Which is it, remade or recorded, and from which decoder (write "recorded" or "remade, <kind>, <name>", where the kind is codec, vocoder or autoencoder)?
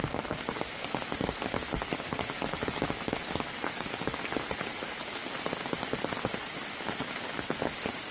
recorded